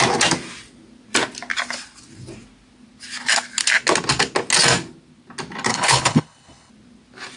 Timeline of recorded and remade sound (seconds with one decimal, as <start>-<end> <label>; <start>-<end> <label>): 0.0-5.7 recorded; 5.7-6.7 remade; 6.7-7.4 recorded